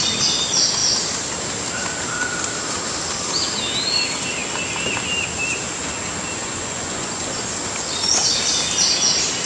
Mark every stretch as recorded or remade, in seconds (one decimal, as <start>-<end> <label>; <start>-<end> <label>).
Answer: 0.0-6.4 recorded; 6.4-7.4 remade; 7.4-9.5 recorded